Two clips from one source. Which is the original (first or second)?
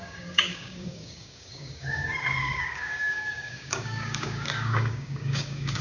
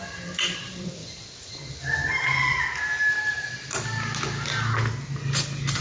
second